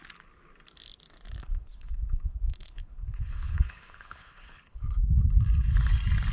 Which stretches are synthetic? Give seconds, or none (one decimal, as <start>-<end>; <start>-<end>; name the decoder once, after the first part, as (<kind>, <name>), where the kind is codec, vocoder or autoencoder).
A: 1.4-5.2 (codec, HILCodec)